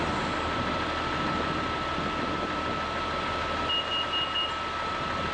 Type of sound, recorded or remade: recorded